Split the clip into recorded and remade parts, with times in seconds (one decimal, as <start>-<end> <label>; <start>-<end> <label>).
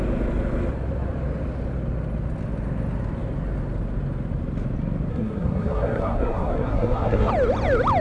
0.0-5.1 recorded; 5.1-7.3 remade; 7.3-8.0 recorded